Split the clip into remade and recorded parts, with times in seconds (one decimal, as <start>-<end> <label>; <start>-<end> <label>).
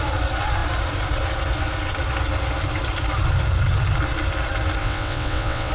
0.0-4.8 recorded; 4.8-5.7 remade